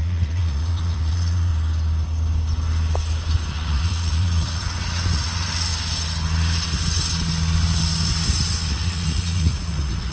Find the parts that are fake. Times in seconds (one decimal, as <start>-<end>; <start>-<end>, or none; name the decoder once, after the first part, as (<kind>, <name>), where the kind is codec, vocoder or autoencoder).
0.0-1.5 (vocoder, Vocos); 3.5-5.7; 8.7-10.1